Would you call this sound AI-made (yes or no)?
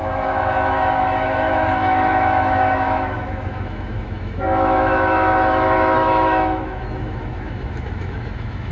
yes